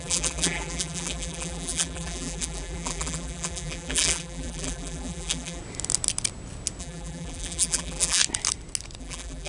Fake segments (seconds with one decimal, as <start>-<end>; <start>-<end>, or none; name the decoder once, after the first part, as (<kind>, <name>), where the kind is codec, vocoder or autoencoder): 0.0-5.6 (vocoder, BigVGAN v2); 6.8-8.2; 9.0-9.5